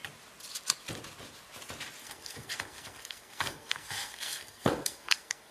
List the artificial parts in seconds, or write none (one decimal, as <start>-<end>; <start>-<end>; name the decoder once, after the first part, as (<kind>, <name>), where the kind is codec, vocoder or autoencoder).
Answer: 2.0-5.5 (codec, SNAC)